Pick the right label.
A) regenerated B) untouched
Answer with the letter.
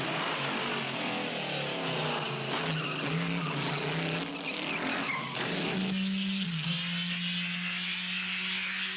B